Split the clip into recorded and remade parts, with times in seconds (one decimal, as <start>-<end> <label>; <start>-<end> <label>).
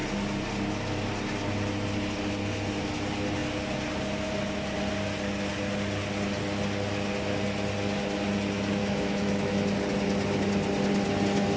0.0-8.8 recorded; 8.8-9.5 remade; 9.5-11.6 recorded